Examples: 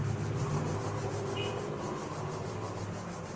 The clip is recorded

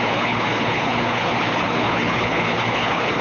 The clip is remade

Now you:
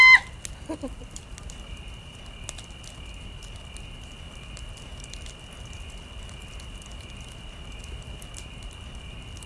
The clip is recorded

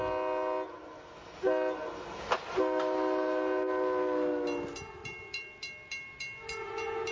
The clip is recorded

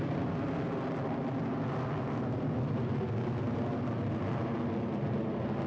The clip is recorded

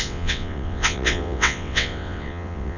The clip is remade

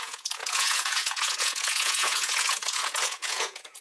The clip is remade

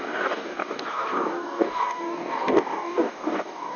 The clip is remade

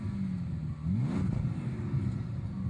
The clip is recorded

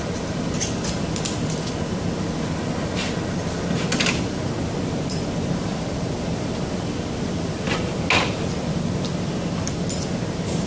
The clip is recorded